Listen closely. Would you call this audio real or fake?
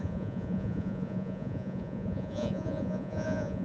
fake